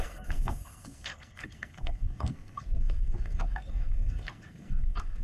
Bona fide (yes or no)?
no